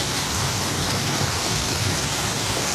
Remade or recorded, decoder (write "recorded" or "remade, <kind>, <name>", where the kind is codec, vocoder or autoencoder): remade, codec, DAC